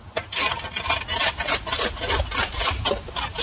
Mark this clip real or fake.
real